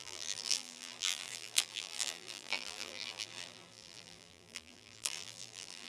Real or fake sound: fake